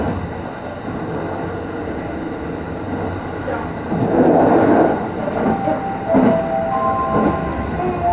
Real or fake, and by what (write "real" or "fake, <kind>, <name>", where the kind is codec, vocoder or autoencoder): real